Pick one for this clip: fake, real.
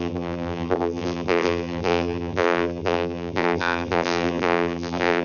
fake